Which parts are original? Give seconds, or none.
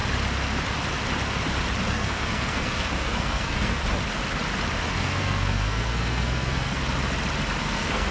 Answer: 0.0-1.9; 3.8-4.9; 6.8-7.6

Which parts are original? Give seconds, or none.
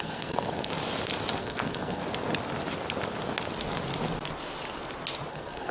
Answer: 0.7-1.4; 2.0-5.3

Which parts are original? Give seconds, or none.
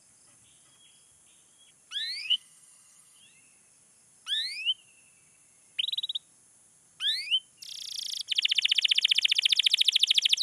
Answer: 0.0-2.2; 3.2-10.4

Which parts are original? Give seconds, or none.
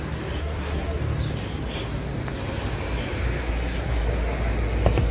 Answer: 0.0-0.4; 1.0-3.4; 4.0-5.1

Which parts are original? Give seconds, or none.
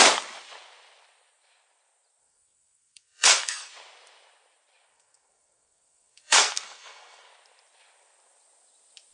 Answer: 0.0-2.2; 3.7-4.9; 7.3-9.1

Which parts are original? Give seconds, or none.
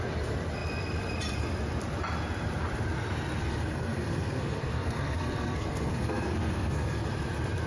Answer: 0.0-3.4; 7.1-7.7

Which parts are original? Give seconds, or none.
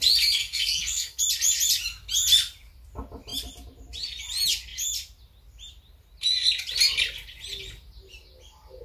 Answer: 0.0-0.4; 1.2-8.8